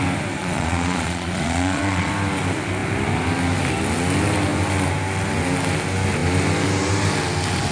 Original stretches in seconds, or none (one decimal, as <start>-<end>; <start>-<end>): 0.0-0.4; 2.1-7.7